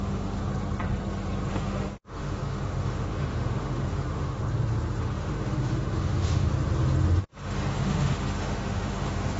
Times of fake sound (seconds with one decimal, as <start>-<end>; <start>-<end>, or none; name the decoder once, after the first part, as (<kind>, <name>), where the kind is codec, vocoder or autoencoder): 0.0-0.4 (autoencoder, DAC-VAE); 1.5-4.4; 5.0-6.5; 7.2-9.4